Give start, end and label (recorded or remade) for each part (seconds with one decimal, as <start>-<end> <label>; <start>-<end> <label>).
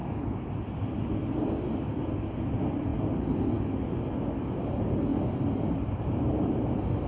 0.0-0.5 remade; 0.5-7.1 recorded